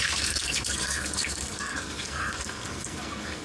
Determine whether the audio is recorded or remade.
remade